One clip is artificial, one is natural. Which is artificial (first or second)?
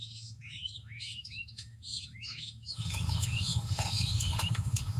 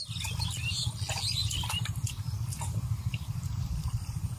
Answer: first